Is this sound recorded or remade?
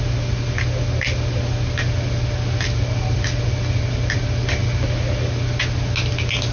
recorded